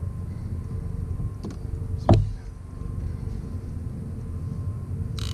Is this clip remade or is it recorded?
recorded